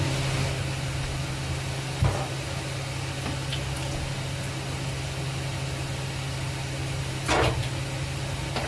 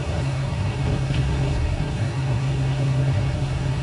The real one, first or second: first